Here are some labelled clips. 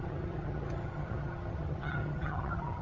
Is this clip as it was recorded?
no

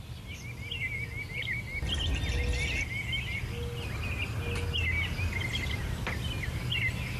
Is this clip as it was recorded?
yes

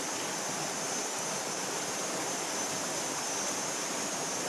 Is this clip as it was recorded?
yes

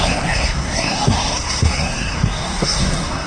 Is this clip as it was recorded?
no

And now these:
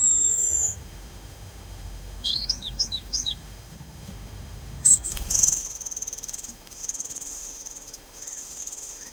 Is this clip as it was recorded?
no